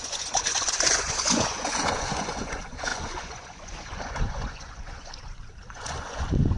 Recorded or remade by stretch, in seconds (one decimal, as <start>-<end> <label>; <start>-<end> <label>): 0.0-6.6 remade